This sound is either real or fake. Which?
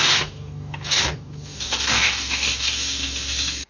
fake